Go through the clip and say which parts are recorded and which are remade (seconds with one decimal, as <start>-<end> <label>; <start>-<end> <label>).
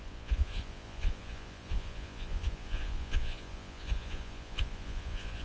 0.0-5.4 remade